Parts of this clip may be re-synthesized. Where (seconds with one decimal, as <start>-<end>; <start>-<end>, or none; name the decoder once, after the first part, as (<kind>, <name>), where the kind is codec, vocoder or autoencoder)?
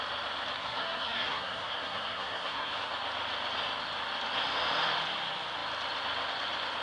0.6-2.9 (codec, SNAC)